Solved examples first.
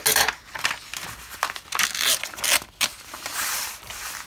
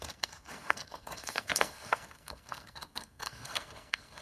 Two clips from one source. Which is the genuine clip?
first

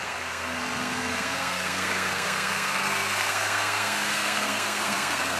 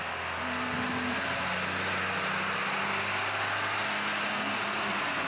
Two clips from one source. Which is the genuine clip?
second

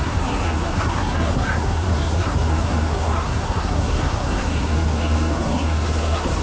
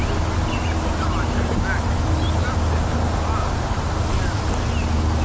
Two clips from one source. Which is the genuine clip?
second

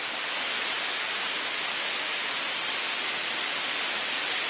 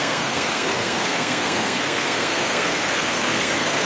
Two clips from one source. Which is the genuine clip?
first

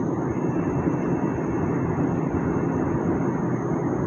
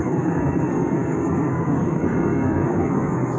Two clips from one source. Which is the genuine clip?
first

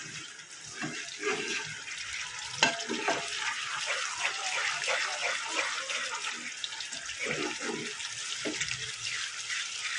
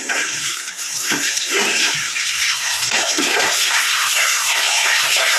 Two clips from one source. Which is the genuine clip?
first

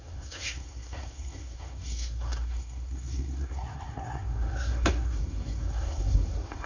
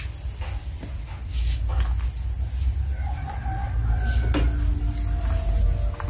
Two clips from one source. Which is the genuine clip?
second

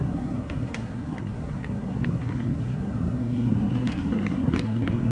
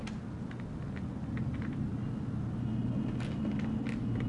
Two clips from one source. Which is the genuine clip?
second